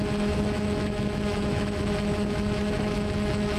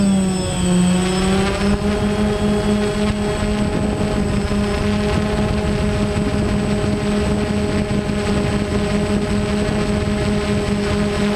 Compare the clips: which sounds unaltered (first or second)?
second